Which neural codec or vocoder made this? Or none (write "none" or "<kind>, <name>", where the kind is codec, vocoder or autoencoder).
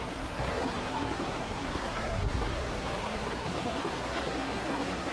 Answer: codec, SNAC